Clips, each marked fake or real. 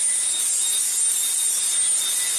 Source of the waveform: real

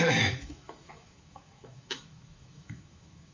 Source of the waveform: fake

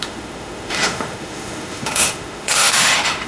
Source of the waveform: fake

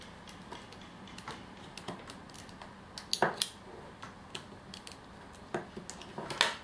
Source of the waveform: real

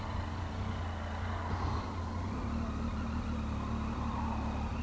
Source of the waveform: real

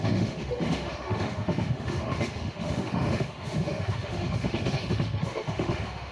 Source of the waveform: fake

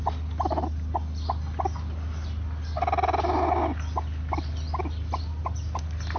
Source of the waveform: real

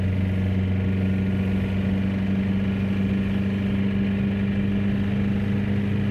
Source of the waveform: real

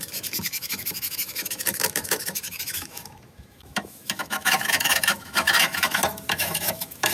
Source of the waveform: fake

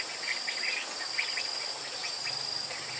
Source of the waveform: real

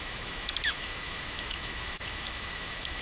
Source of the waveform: fake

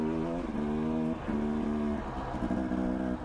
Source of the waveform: real